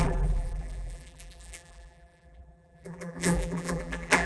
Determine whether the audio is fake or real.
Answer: fake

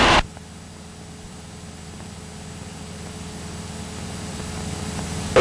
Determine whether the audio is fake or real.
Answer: real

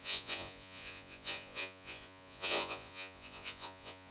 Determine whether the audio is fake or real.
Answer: fake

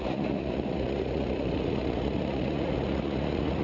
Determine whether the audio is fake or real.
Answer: fake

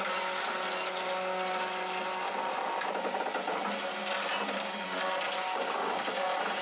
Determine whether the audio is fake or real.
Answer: real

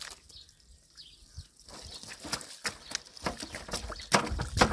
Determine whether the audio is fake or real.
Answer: real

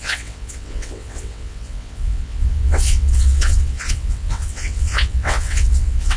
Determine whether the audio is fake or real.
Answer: fake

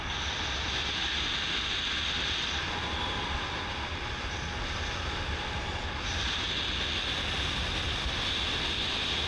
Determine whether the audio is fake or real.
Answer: real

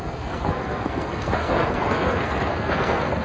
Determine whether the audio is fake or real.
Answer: fake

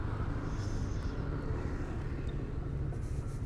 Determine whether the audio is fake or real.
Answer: real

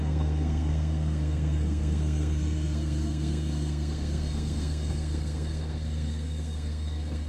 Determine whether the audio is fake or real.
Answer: fake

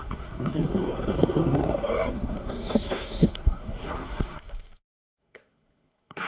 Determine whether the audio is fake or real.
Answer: fake